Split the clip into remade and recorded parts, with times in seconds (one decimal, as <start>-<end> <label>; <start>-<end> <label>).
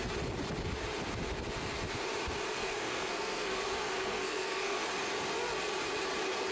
0.0-2.6 recorded; 2.6-4.8 remade; 4.8-6.5 recorded